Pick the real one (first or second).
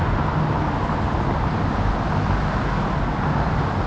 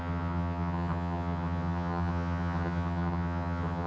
first